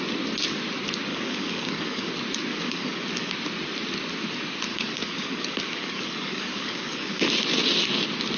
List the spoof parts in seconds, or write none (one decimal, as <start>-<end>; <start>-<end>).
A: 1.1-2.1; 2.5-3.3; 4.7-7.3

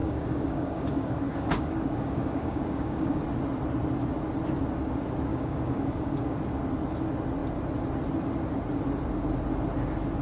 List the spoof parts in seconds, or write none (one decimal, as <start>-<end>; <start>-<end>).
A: 0.0-3.2; 5.3-6.4

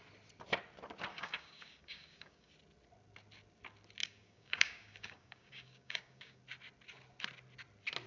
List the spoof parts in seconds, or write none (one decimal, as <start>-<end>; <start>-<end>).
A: 1.1-2.5; 4.0-6.4

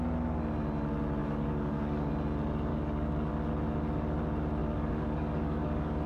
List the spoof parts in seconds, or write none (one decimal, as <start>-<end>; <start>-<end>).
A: 1.2-2.1; 2.7-3.3; 4.6-6.1

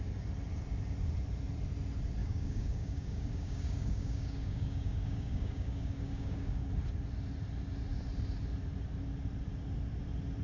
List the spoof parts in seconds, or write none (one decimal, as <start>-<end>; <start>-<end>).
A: 2.2-6.7

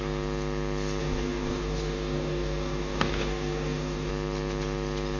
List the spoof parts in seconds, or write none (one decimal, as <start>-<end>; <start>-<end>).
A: 1.0-4.1

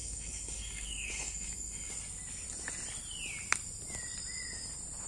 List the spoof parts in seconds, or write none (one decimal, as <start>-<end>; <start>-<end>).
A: 0.0-1.9

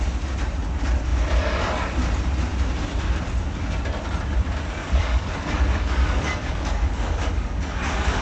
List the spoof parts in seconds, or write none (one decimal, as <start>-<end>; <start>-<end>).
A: 4.8-8.2